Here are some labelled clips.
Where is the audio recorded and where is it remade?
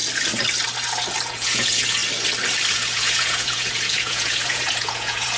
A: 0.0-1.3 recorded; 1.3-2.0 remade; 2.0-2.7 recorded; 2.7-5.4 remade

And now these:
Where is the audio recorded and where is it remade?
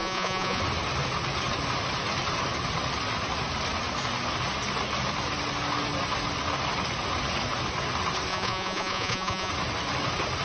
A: 0.0-0.6 remade; 0.6-8.3 recorded; 8.3-9.5 remade; 9.5-10.4 recorded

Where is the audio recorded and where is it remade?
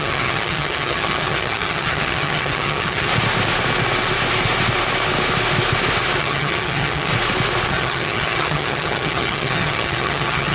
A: 0.0-3.1 remade; 3.1-6.2 recorded; 6.2-7.1 remade; 7.1-7.7 recorded; 7.7-10.5 remade